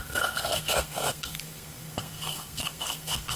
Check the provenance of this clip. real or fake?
fake